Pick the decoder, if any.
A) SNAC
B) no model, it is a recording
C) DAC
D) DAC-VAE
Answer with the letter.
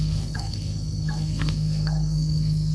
A